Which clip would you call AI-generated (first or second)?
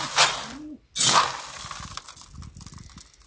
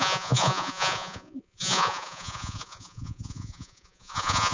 second